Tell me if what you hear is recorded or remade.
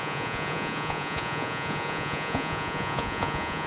remade